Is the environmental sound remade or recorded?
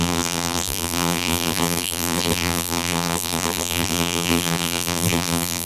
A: remade